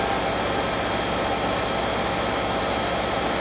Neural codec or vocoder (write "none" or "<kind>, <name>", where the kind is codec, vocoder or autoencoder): none